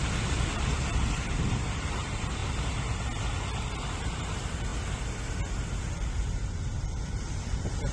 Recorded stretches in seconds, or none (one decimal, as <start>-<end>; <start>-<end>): 2.4-3.6; 4.7-5.7